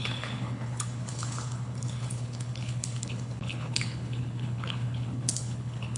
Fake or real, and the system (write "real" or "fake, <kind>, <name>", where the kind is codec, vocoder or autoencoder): fake, codec, HILCodec